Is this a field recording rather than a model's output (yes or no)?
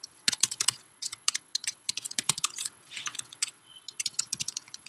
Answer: no